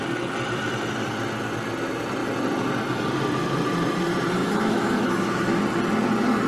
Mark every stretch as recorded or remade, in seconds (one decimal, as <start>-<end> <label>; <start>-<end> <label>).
0.0-4.4 recorded; 4.4-5.6 remade; 5.6-6.5 recorded